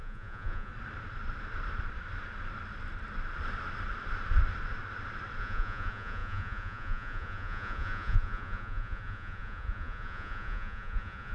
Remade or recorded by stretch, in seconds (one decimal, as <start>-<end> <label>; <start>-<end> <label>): 0.0-0.7 remade; 0.7-5.4 recorded; 5.4-11.3 remade